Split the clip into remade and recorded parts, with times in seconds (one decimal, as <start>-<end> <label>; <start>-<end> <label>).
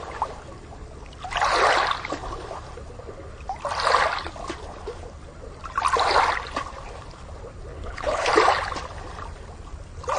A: 0.0-7.7 recorded; 7.7-8.3 remade; 8.3-10.2 recorded